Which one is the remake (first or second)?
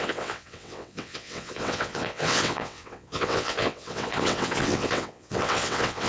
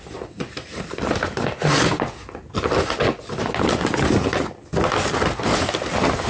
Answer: first